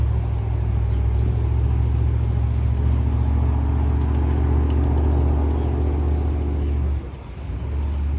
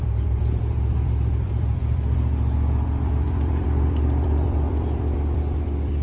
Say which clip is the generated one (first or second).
second